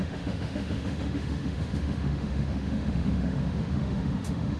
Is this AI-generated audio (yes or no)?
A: yes